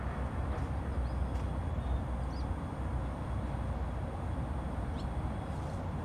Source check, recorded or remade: recorded